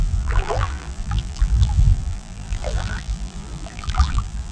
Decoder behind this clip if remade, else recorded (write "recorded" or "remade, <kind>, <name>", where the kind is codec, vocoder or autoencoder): remade, vocoder, BigVGAN v2